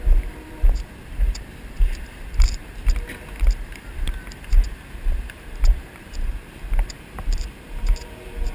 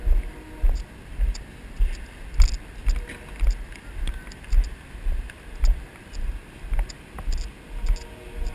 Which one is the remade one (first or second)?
first